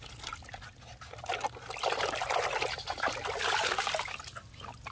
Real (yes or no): yes